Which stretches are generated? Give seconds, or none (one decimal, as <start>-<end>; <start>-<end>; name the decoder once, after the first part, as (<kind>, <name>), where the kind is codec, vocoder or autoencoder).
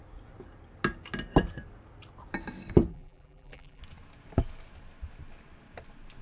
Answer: 2.9-3.8 (vocoder, BigVGAN v2)